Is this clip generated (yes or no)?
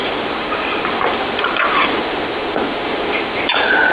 yes